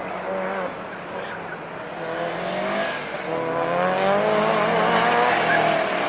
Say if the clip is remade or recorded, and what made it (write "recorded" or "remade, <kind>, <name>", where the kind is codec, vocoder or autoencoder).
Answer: recorded